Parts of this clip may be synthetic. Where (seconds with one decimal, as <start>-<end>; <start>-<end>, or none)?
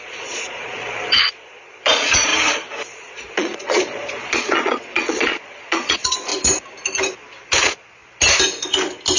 0.0-2.3; 2.9-6.3; 7.6-8.0